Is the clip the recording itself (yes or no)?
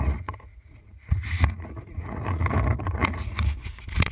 no